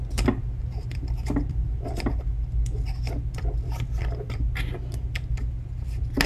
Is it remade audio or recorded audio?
recorded